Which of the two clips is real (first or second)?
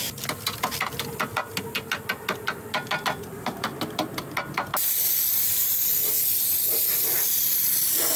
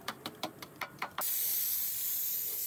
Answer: first